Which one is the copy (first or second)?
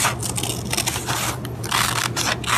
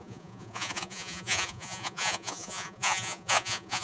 second